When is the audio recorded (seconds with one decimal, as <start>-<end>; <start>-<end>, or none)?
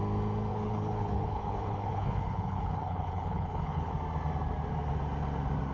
0.0-0.5; 3.9-5.7